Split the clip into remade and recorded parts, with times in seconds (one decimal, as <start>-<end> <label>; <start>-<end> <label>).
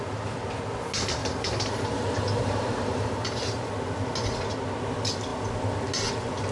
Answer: 0.0-1.2 recorded; 1.2-3.7 remade; 3.7-6.5 recorded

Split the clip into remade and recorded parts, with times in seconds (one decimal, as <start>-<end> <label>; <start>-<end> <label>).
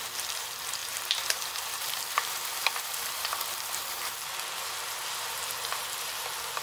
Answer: 0.0-0.8 recorded; 0.8-3.8 remade; 3.8-6.6 recorded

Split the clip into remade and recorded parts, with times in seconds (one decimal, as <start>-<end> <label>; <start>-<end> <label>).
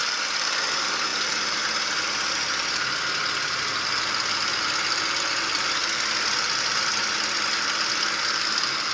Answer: 0.0-0.7 remade; 0.7-5.8 recorded; 5.8-7.0 remade; 7.0-8.9 recorded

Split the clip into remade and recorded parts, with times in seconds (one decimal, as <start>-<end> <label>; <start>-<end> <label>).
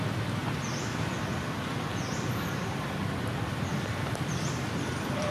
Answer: 0.0-0.4 recorded; 0.4-0.9 remade; 0.9-1.3 recorded; 1.3-4.5 remade; 4.5-5.3 recorded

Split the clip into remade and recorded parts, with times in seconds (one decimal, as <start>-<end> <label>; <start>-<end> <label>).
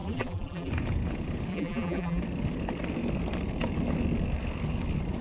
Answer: 0.0-0.7 remade; 0.7-1.5 recorded; 1.5-2.2 remade; 2.2-5.2 recorded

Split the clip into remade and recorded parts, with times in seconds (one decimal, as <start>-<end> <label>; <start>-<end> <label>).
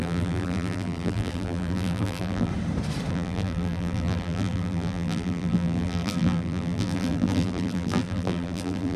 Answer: 0.0-2.5 remade; 2.5-3.1 recorded; 3.1-9.0 remade